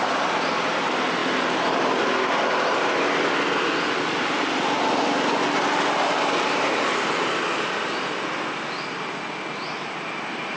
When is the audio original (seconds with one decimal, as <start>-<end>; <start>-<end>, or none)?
0.0-10.6